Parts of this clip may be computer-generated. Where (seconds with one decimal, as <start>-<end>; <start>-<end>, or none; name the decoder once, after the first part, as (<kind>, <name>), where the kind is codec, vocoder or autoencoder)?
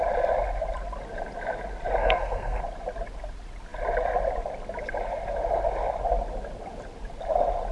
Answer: 2.0-2.6 (codec, SNAC)